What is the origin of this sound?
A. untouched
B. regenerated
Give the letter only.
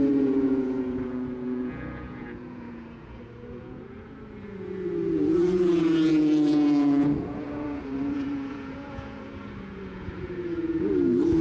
B